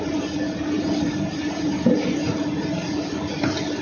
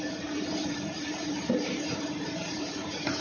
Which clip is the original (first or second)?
first